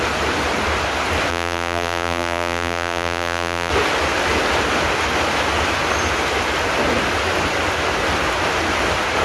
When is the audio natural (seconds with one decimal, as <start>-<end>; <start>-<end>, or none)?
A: 0.0-1.3; 3.7-9.2